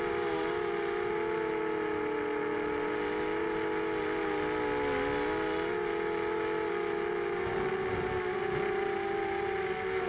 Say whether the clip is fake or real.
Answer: real